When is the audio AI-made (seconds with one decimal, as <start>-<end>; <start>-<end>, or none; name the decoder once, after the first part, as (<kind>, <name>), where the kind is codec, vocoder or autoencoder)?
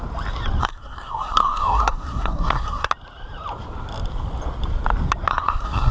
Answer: 0.6-2.9 (codec, SNAC); 5.3-5.9